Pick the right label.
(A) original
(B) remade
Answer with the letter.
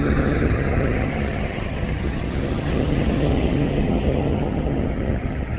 B